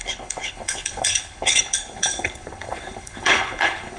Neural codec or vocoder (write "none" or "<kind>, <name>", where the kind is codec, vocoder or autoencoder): codec, HILCodec